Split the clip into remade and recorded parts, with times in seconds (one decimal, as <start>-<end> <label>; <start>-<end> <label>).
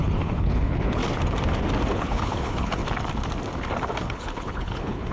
0.0-1.0 remade; 1.0-1.9 recorded; 1.9-2.8 remade; 2.8-4.0 recorded; 4.0-5.1 remade